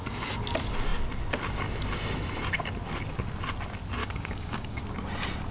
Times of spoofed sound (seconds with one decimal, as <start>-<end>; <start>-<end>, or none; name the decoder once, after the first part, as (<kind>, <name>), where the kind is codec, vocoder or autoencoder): 4.0-4.8 (codec, DAC)